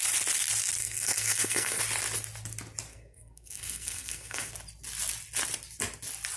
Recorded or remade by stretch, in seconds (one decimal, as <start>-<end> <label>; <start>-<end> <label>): 0.0-0.8 recorded; 0.8-1.8 remade; 1.8-2.9 recorded; 2.9-4.5 remade; 4.5-6.4 recorded